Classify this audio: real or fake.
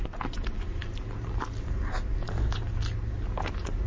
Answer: real